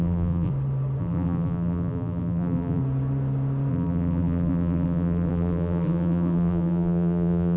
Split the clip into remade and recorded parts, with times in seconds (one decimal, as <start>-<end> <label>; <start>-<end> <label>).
0.0-0.5 remade; 0.5-1.0 recorded; 1.0-2.8 remade; 2.8-3.7 recorded; 3.7-7.6 remade